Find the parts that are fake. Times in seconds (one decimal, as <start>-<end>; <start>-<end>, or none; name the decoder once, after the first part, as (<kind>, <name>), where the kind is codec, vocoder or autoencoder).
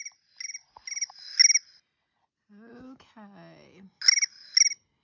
none